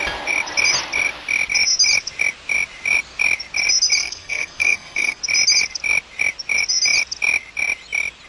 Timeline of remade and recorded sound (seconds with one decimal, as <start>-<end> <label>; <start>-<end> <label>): 0.0-4.0 recorded; 4.0-5.2 remade; 5.2-8.3 recorded